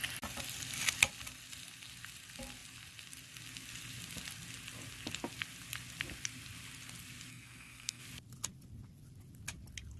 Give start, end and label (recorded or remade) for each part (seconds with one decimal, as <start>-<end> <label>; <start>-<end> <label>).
0.0-7.3 recorded; 7.3-8.0 remade; 8.0-10.0 recorded